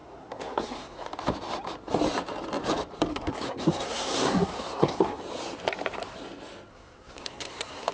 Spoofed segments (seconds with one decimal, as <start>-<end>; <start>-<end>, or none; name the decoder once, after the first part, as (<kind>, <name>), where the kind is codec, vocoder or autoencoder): 0.0-1.1 (codec, SNAC); 3.1-5.2; 6.7-7.9